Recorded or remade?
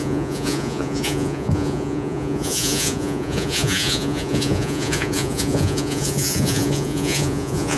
remade